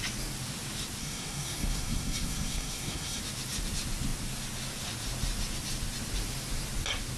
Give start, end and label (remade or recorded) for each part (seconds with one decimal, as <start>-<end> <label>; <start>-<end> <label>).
0.0-1.0 recorded; 1.0-3.2 remade; 3.2-7.2 recorded

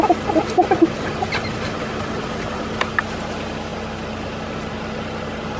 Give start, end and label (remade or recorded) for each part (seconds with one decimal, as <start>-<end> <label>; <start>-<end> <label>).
0.0-5.6 recorded

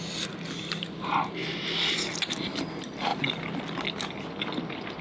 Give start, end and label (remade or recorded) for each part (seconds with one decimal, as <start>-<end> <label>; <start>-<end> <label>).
0.0-5.0 recorded

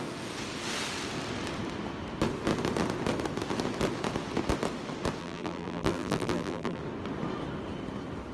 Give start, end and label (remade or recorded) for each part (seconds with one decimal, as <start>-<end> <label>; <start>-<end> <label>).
0.0-5.2 recorded; 5.2-6.8 remade; 6.8-8.3 recorded